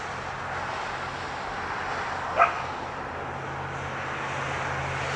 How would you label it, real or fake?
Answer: real